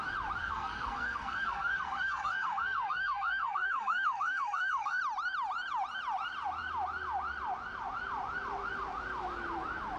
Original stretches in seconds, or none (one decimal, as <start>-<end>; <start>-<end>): 0.0-0.4; 5.0-10.0